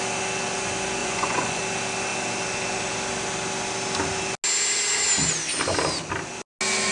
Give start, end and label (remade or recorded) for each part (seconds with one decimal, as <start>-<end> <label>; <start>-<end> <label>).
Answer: 0.0-1.0 recorded; 1.0-1.6 remade; 1.6-6.9 recorded